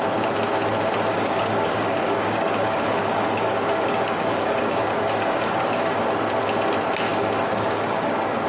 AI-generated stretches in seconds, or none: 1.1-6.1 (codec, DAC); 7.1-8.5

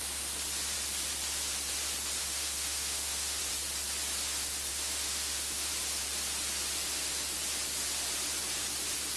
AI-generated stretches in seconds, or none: 2.2-3.4 (autoencoder, DAC-VAE); 4.7-5.7

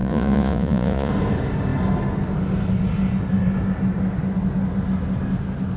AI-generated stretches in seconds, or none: 0.0-1.1 (vocoder, Vocos)

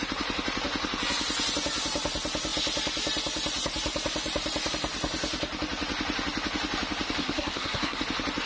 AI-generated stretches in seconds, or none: 7.2-8.0 (codec, SNAC)

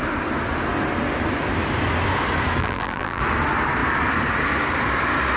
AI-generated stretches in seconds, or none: 2.6-3.2 (vocoder, BigVGAN v2)

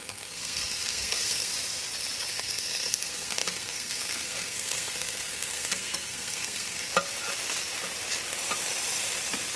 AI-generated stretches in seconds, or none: 0.0-1.5 (codec, SNAC); 2.3-6.9